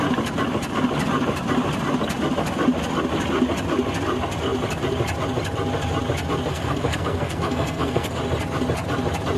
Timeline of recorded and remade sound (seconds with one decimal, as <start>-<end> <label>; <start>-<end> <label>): 0.0-6.5 recorded; 6.5-8.2 remade; 8.2-9.4 recorded